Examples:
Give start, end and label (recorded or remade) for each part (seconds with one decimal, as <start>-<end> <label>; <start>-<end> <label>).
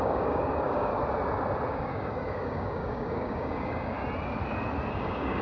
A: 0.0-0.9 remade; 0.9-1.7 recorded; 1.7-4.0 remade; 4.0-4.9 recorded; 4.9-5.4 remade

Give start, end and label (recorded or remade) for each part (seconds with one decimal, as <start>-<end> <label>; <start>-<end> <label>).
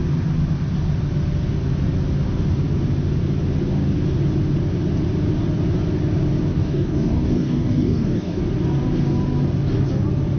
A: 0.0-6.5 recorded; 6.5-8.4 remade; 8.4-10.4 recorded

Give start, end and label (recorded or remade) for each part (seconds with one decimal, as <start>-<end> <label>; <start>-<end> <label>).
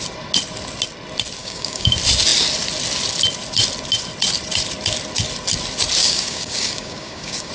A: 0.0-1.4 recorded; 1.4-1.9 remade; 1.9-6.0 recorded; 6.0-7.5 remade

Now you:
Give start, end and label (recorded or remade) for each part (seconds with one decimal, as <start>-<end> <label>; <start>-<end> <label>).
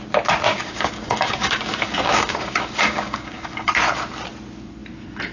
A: 0.0-0.5 recorded; 0.5-3.7 remade; 3.7-5.3 recorded